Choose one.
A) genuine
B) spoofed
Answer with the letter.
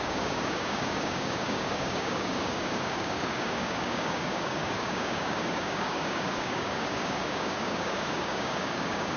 B